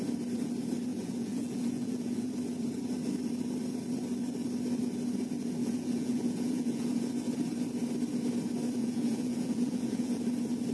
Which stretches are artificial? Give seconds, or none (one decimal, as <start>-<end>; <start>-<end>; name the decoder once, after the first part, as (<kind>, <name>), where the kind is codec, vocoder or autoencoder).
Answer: 0.9-2.3 (vocoder, Vocos); 5.6-7.0; 8.8-10.2